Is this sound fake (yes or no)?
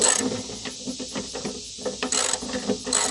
no